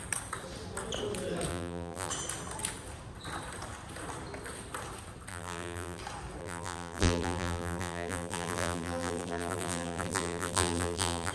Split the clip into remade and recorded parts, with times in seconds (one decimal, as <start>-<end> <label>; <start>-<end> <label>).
0.0-1.5 recorded; 1.5-2.1 remade; 2.1-5.3 recorded; 5.3-6.0 remade; 6.0-6.4 recorded; 6.4-11.3 remade